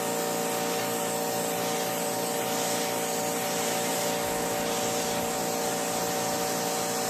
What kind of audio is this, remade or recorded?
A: recorded